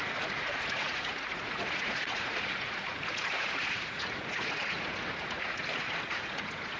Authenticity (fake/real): fake